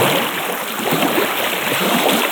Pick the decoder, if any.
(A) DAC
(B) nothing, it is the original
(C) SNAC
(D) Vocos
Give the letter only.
B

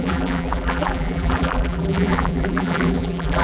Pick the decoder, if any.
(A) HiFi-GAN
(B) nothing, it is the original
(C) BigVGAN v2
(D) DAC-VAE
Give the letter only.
C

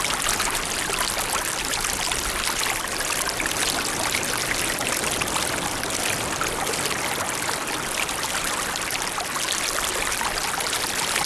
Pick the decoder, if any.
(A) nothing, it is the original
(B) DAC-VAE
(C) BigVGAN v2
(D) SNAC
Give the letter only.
A